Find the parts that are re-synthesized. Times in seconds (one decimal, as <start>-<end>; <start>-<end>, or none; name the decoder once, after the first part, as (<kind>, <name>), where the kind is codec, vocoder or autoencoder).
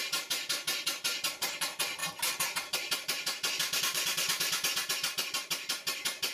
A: 0.0-6.3 (vocoder, BigVGAN v2)